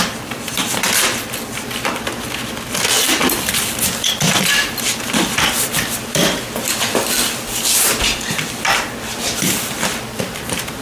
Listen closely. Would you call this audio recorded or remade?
remade